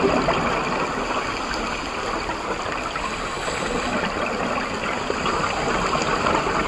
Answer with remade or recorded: recorded